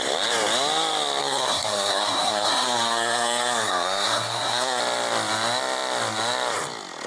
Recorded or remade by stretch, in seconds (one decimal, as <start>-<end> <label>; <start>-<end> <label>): 0.0-1.2 recorded; 1.2-4.8 remade; 4.8-7.1 recorded